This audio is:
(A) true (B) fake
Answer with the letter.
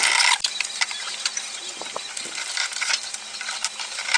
A